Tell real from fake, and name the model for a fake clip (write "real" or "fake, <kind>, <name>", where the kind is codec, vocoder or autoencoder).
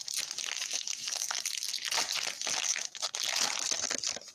real